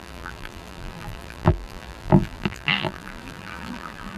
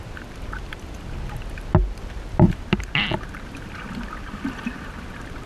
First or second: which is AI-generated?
first